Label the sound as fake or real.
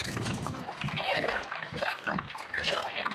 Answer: fake